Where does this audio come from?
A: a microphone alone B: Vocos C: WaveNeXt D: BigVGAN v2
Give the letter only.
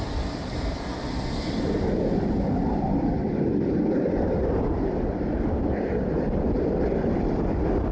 D